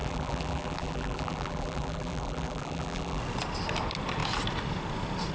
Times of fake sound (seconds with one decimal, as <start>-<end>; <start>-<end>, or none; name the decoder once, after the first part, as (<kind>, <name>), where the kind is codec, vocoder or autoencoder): 0.0-3.2 (vocoder, BigVGAN v2)